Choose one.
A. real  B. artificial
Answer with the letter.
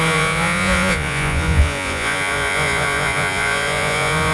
B